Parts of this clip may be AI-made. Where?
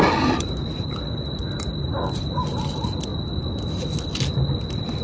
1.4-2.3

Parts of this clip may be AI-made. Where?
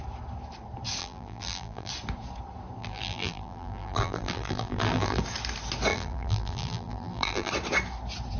1.0-1.9; 2.8-5.2; 5.9-7.5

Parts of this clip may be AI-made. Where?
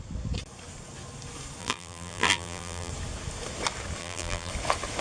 1.6-2.9; 4.0-4.5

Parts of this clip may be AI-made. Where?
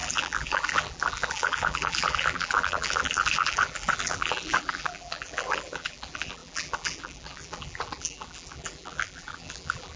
0.0-10.0